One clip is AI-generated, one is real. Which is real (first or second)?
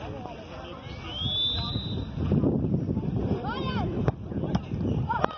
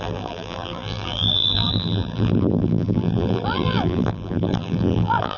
first